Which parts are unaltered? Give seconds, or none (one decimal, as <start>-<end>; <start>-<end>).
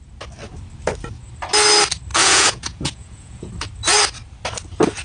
0.0-2.1; 3.5-5.0